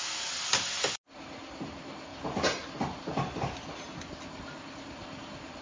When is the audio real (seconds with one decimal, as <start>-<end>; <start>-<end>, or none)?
0.0-5.6